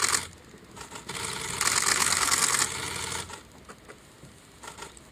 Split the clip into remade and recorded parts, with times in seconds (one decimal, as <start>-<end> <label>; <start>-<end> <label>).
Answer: 0.0-1.9 recorded; 1.9-2.6 remade; 2.6-5.1 recorded